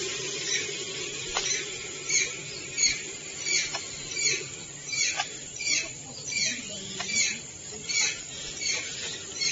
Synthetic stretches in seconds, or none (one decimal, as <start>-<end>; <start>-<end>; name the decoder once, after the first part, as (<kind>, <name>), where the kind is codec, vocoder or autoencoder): 4.9-6.0 (vocoder, BigVGAN v2)